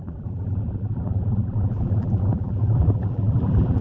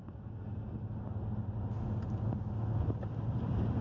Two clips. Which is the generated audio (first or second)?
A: first